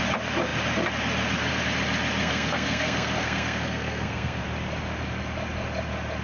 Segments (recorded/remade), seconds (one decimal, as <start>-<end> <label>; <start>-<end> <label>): 0.0-2.2 recorded; 2.2-4.4 remade; 4.4-6.2 recorded